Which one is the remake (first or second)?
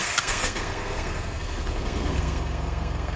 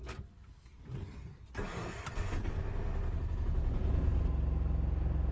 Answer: first